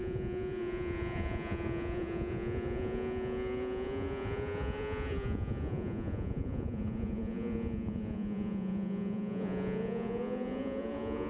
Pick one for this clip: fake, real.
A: fake